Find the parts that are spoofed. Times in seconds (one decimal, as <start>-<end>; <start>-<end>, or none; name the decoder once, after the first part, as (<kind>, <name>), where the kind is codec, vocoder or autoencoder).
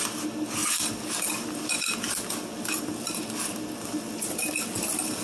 none